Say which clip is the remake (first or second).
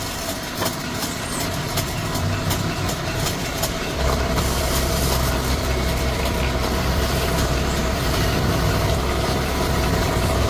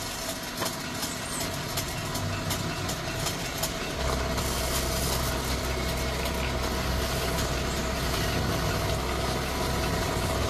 first